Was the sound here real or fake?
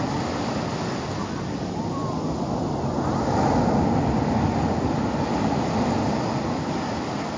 real